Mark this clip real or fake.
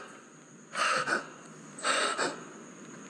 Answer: fake